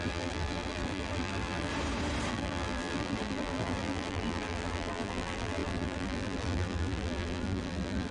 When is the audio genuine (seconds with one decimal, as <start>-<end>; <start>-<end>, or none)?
1.7-2.3